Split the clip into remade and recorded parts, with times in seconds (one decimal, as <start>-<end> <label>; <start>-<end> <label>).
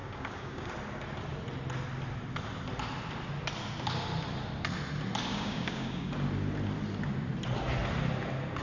0.0-0.7 remade; 0.7-5.3 recorded; 5.3-6.1 remade; 6.1-8.6 recorded